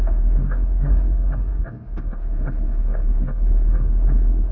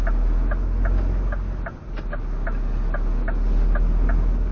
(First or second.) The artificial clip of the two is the first